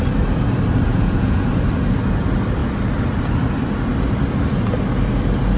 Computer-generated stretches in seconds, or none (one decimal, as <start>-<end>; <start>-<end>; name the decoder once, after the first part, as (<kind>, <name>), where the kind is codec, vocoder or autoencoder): 0.9-1.5 (vocoder, Vocos)